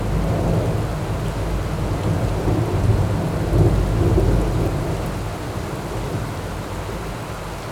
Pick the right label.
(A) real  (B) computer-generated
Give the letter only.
A